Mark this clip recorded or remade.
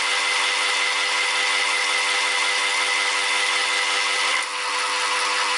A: recorded